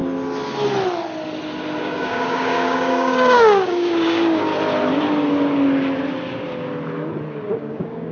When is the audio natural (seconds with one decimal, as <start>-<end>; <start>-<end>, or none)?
0.0-1.8; 4.5-7.5